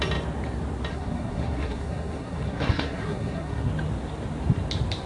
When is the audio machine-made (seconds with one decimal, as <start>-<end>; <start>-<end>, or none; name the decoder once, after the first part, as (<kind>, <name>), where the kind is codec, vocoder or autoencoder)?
0.9-3.7 (codec, SNAC)